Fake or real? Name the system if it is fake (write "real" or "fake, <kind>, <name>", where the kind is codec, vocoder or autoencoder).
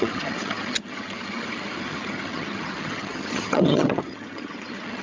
fake, vocoder, HiFi-GAN